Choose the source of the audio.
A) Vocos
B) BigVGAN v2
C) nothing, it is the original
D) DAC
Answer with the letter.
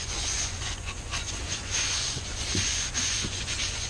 A